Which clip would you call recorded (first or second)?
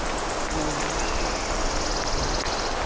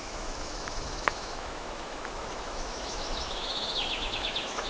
first